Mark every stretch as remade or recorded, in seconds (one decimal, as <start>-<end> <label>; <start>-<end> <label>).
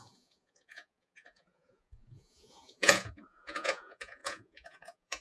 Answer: 0.0-5.2 remade